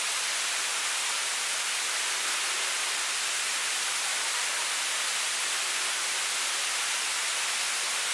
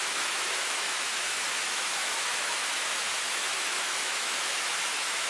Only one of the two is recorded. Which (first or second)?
first